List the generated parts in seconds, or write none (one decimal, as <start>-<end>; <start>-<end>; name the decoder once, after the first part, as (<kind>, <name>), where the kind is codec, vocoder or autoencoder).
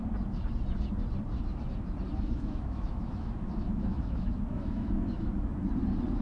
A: 2.1-5.5 (autoencoder, DAC-VAE)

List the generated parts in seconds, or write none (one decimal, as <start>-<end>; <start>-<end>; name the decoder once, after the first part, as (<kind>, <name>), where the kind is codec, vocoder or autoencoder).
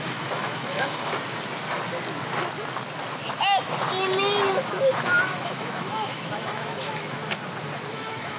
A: 0.0-1.1 (autoencoder, DAC-VAE); 4.5-7.2; 7.9-8.4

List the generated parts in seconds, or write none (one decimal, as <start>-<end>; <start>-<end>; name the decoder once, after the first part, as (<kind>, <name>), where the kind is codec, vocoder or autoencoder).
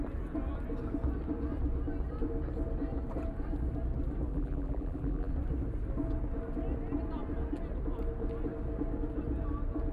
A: 4.3-5.3 (vocoder, BigVGAN v2)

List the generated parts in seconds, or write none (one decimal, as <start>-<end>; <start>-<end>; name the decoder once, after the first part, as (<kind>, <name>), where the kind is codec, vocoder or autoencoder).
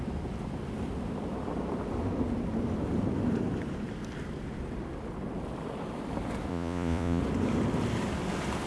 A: 6.5-7.2 (vocoder, Vocos)